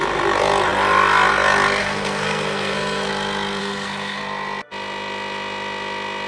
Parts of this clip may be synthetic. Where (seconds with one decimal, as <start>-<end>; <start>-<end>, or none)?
1.8-3.1; 3.6-4.2